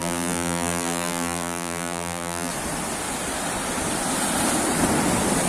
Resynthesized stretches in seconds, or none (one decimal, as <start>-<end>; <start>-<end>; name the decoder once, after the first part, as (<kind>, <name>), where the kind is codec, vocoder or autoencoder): 0.0-2.5 (vocoder, BigVGAN v2)